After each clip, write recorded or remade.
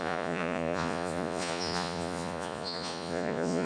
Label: remade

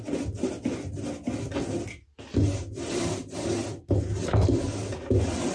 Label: recorded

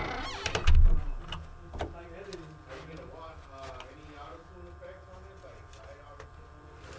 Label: recorded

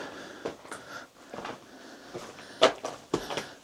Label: recorded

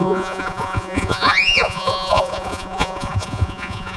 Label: remade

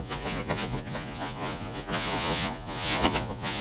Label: remade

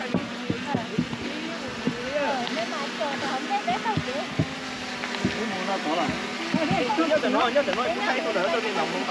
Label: recorded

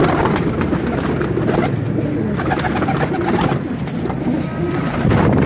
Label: recorded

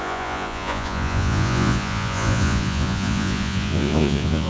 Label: remade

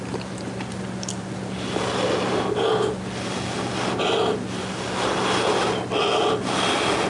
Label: recorded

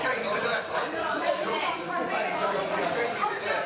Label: remade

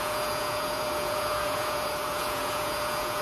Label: remade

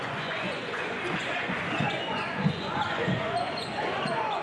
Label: remade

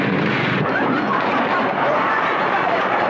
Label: remade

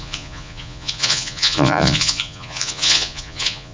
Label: remade